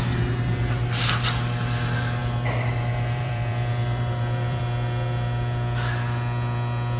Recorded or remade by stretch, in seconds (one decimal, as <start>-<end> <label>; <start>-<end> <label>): 0.0-2.2 recorded; 2.2-4.6 remade; 4.6-7.0 recorded